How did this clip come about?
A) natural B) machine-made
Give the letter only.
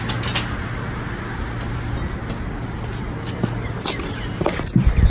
A